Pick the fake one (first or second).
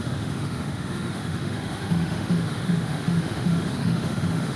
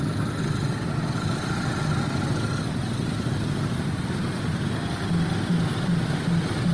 first